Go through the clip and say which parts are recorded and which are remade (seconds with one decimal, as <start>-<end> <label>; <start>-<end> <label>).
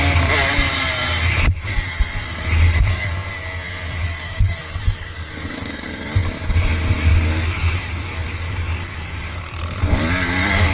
0.0-4.0 recorded; 4.0-5.9 remade; 5.9-7.1 recorded; 7.1-9.4 remade; 9.4-10.7 recorded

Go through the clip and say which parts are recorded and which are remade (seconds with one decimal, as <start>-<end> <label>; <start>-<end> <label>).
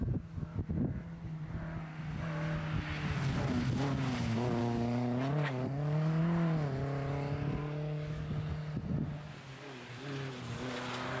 0.0-4.6 recorded; 4.6-6.2 remade; 6.2-7.6 recorded; 7.6-8.3 remade; 8.3-11.2 recorded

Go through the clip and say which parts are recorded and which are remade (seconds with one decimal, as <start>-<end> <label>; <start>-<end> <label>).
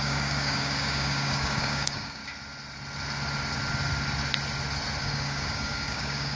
0.0-2.2 remade; 2.2-5.0 recorded; 5.0-6.3 remade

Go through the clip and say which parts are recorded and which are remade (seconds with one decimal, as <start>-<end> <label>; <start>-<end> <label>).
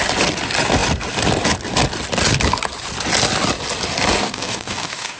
0.0-4.2 recorded; 4.2-5.2 remade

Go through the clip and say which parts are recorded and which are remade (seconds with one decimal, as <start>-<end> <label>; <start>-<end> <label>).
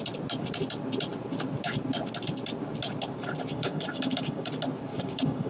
0.0-3.5 recorded; 3.5-4.5 remade; 4.5-4.9 recorded; 4.9-5.5 remade